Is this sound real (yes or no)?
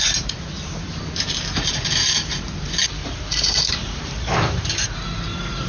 no